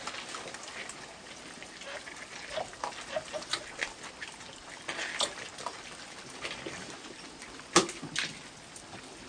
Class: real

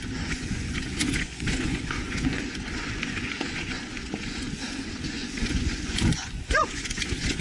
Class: fake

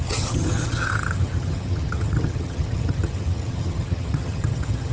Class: fake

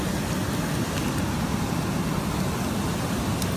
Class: real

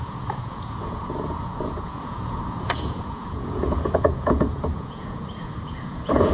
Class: fake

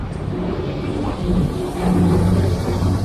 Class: fake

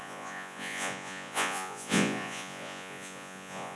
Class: fake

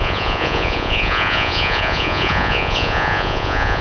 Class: fake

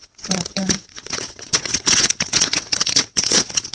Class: fake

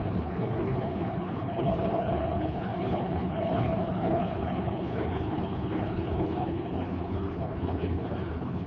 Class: fake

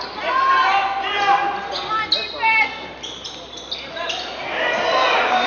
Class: real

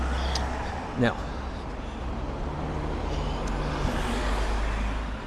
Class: real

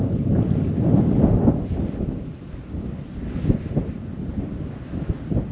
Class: real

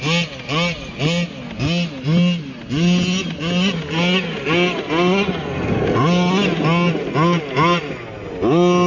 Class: real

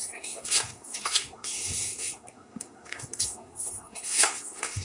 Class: fake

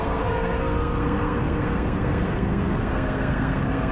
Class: fake